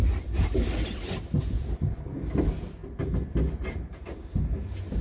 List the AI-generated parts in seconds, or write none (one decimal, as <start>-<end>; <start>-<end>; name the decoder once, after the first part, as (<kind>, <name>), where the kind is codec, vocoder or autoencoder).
none